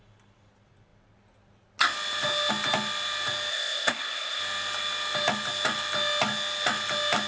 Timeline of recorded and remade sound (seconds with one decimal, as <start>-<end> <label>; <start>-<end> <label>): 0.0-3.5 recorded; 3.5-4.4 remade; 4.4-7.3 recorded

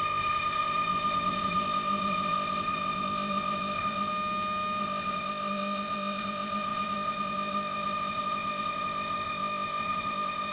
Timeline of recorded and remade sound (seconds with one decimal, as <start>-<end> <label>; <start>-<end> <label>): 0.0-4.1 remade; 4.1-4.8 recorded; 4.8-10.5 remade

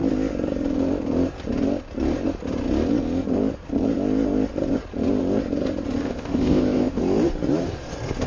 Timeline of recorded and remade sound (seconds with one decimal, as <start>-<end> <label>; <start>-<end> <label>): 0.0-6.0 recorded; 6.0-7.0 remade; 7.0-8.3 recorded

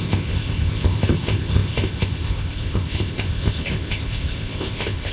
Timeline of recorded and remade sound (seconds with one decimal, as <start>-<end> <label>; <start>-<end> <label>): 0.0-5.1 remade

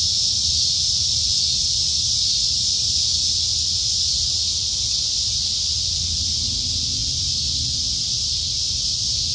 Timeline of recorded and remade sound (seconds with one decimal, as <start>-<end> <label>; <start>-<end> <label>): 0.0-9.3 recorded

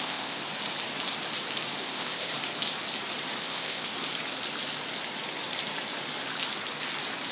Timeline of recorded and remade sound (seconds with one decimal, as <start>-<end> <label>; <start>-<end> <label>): 0.0-0.4 remade; 0.4-1.8 recorded; 1.8-2.3 remade; 2.3-3.4 recorded; 3.4-3.9 remade; 3.9-7.3 recorded